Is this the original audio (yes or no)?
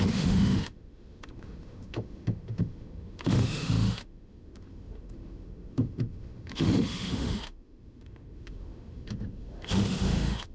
no